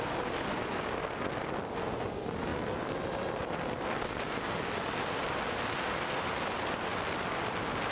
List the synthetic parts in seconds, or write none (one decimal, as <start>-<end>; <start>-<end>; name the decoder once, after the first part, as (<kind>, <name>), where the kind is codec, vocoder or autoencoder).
none